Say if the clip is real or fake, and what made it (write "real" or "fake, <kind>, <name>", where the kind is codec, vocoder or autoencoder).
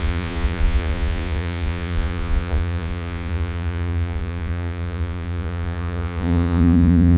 fake, vocoder, Vocos